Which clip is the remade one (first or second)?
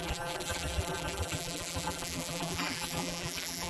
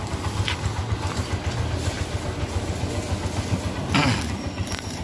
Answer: first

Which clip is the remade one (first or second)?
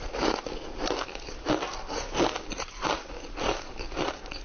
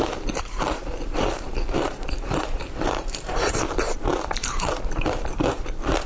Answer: second